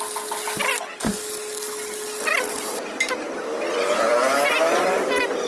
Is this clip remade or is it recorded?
recorded